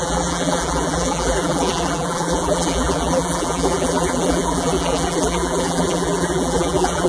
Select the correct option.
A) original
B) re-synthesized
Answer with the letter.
B